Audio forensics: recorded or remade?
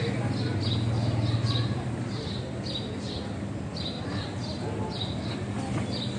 recorded